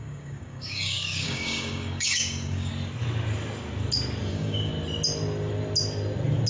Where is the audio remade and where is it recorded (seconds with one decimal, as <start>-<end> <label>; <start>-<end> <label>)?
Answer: 0.0-2.7 remade; 2.7-4.3 recorded; 4.3-4.7 remade; 4.7-6.5 recorded

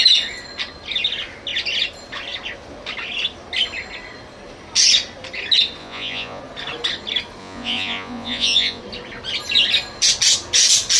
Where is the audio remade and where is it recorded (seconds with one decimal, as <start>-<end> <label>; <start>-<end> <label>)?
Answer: 0.0-5.8 recorded; 5.8-6.4 remade; 6.4-7.4 recorded; 7.4-8.8 remade; 8.8-11.0 recorded

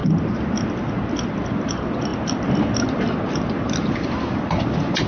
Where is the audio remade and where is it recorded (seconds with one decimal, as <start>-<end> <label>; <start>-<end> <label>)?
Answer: 0.0-5.1 recorded

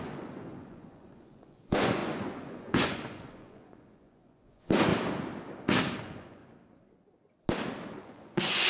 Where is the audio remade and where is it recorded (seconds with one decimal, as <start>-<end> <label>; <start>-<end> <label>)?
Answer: 0.0-4.9 remade; 4.9-6.0 recorded; 6.0-6.4 remade; 6.4-7.9 recorded; 7.9-8.7 remade

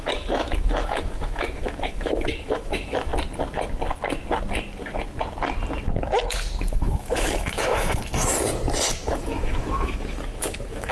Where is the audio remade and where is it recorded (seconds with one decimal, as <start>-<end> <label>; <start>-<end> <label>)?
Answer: 0.0-3.1 remade; 3.1-6.7 recorded; 6.7-8.0 remade; 8.0-8.9 recorded; 8.9-10.9 remade

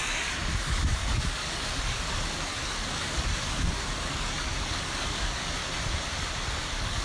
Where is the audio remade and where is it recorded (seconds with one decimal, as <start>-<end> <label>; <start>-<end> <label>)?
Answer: 0.0-5.6 remade; 5.6-6.5 recorded; 6.5-7.0 remade

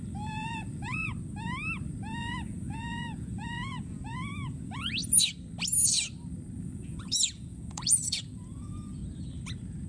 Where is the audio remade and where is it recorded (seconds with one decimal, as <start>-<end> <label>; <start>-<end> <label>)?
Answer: 0.0-1.1 remade; 1.1-2.2 recorded; 2.2-5.0 remade; 5.0-6.6 recorded; 6.6-9.0 remade; 9.0-9.9 recorded